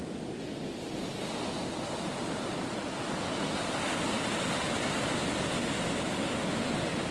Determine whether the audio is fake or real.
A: real